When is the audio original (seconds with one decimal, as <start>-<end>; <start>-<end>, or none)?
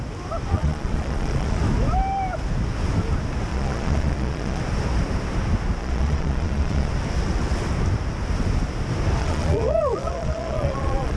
0.0-0.5; 1.6-3.5; 4.6-5.8; 6.9-9.2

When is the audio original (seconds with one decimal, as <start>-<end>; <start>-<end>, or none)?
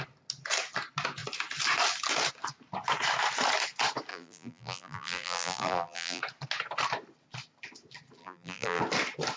0.0-4.1; 6.2-8.2; 8.8-9.4